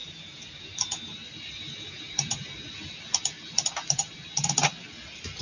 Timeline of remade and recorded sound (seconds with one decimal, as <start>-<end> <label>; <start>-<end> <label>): 0.0-5.4 recorded